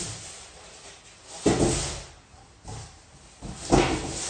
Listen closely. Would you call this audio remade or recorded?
recorded